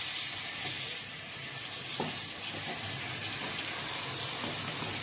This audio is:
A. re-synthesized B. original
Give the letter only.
B